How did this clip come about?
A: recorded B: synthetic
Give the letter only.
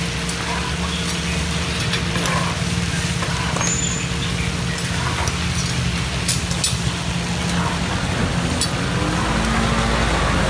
A